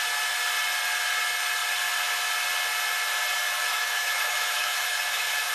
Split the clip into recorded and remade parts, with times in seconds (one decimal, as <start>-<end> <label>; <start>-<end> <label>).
0.0-3.7 recorded; 3.7-5.5 remade